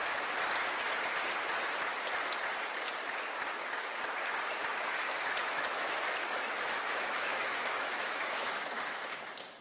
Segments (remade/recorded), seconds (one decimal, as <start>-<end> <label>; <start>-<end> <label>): 0.0-4.7 recorded; 4.7-9.0 remade; 9.0-9.6 recorded